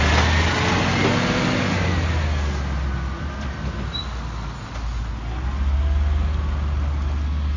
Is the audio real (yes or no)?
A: yes